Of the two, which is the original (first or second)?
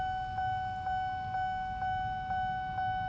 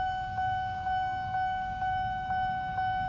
first